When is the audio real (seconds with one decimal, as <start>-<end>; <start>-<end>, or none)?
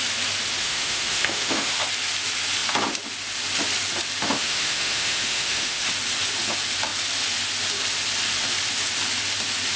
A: 0.0-0.6; 1.7-4.2; 5.8-9.8